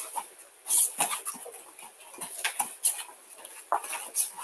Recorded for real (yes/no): yes